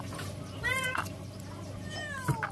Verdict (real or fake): real